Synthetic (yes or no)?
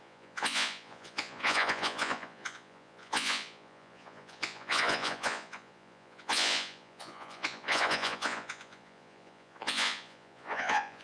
yes